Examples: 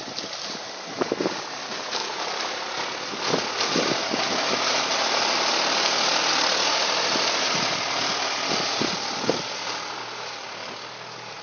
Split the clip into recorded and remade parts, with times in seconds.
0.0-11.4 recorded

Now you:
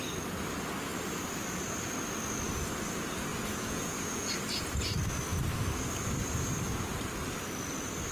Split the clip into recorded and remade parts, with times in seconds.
0.0-3.3 recorded; 3.3-4.3 remade; 4.3-8.1 recorded